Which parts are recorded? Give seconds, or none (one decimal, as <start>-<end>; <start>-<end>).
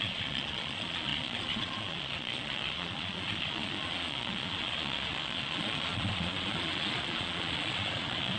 none